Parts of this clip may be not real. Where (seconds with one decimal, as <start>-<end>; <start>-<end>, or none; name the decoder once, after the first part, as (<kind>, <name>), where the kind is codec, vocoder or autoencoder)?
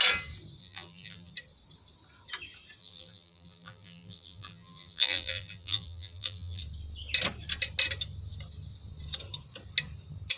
0.6-1.3 (vocoder, BigVGAN v2); 2.8-6.6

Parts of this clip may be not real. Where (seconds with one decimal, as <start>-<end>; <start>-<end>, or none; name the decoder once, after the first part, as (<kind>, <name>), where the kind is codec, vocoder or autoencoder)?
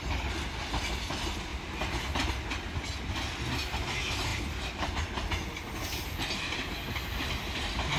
none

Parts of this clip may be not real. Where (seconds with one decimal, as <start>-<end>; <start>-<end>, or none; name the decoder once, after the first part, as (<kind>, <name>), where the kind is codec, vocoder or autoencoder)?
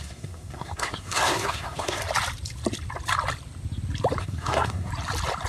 0.0-2.0 (codec, SNAC); 4.2-4.9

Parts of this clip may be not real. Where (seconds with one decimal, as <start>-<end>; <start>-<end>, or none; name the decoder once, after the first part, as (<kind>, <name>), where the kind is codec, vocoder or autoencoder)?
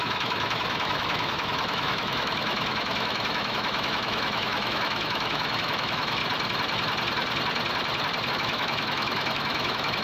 0.0-6.2 (autoencoder, DAC-VAE); 8.3-10.0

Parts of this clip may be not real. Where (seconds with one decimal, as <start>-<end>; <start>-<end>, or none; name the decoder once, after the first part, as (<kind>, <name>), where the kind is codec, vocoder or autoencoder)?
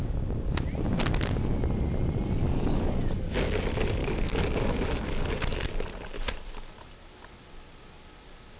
2.4-3.0 (codec, DAC); 4.0-5.7